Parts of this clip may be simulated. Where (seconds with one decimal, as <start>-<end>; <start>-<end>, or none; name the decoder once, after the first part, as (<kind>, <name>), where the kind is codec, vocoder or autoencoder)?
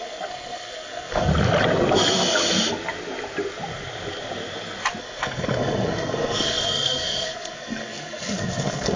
0.0-1.3 (codec, SNAC); 5.0-9.0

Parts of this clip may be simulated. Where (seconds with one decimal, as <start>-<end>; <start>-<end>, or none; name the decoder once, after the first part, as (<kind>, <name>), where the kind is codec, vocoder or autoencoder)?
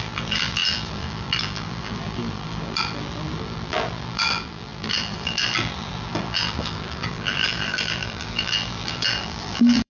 0.0-9.9 (vocoder, BigVGAN v2)